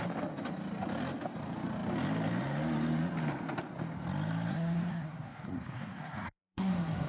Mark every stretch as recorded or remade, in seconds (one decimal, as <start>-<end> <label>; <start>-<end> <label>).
0.0-4.5 recorded; 4.5-7.1 remade